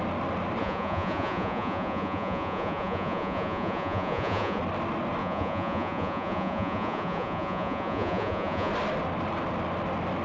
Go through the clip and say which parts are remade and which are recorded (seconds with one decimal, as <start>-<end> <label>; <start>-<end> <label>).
0.0-0.6 recorded; 0.6-4.6 remade; 4.6-5.2 recorded; 5.2-8.7 remade; 8.7-10.2 recorded